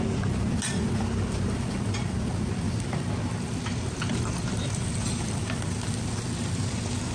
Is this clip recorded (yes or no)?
yes